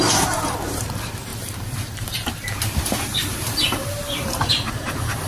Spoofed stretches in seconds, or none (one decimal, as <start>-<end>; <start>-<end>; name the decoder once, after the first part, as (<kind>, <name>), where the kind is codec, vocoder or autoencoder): 0.0-5.3 (vocoder, BigVGAN v2)